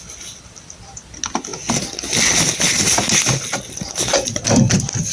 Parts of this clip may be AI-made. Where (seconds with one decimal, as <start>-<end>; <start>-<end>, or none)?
none